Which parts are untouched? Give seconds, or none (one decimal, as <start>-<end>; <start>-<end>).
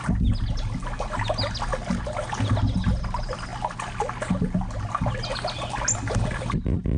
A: 0.0-7.0